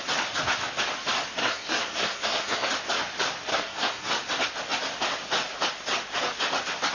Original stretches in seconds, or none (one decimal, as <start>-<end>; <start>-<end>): 0.0-1.4; 2.7-3.5; 4.1-6.9